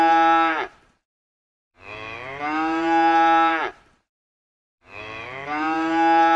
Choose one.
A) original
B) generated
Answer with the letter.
B